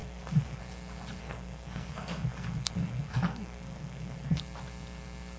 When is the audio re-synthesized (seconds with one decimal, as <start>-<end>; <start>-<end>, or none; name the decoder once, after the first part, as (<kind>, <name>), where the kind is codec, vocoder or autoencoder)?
0.0-0.6 (codec, SNAC); 1.2-4.4